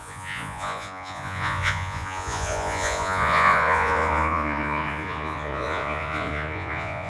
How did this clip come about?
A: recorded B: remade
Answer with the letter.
B